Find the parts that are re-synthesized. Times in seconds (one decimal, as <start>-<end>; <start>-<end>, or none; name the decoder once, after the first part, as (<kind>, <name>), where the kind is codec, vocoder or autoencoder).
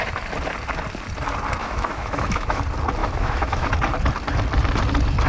1.6-2.6 (autoencoder, DAC-VAE); 3.0-3.7